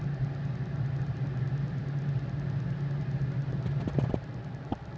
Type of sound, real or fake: real